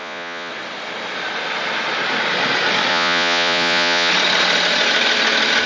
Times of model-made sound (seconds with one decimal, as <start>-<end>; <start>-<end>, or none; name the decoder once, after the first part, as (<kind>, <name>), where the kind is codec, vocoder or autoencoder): 0.0-0.5 (vocoder, Vocos); 2.9-4.1